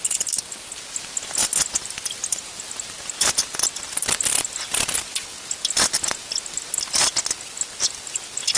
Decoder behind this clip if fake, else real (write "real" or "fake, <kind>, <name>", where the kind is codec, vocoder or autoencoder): real